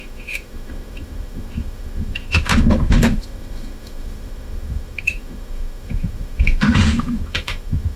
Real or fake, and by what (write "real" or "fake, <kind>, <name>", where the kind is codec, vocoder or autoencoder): fake, autoencoder, DAC-VAE